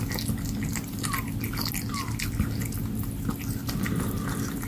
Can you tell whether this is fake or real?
real